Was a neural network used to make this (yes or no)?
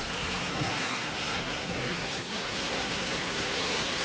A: yes